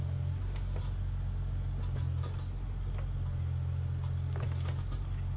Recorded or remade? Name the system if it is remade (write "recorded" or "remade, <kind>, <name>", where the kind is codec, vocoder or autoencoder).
recorded